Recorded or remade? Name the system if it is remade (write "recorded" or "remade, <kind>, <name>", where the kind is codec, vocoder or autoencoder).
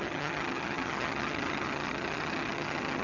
remade, vocoder, HiFi-GAN